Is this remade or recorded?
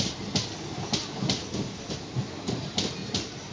recorded